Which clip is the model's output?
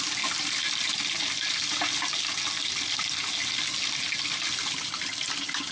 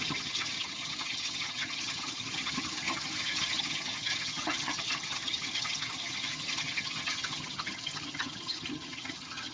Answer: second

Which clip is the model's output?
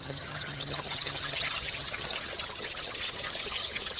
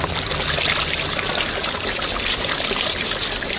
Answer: first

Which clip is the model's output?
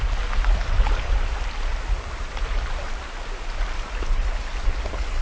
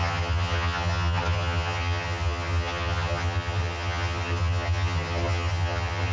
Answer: second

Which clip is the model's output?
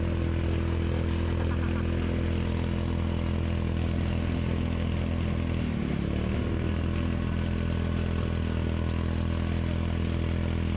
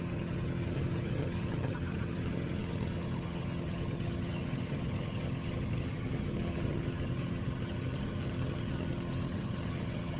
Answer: second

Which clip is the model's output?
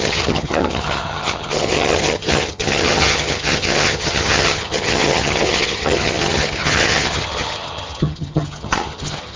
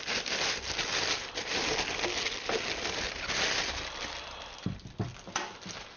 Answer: first